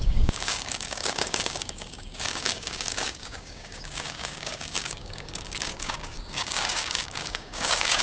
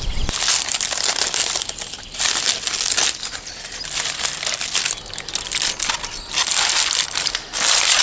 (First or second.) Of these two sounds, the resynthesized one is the first